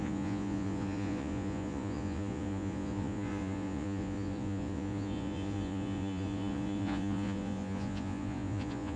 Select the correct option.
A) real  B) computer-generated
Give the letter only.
B